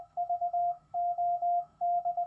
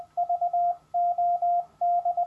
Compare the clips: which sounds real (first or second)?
second